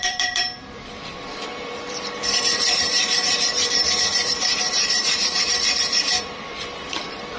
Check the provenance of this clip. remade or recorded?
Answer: remade